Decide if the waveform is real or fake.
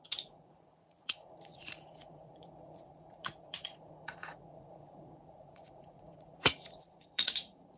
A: fake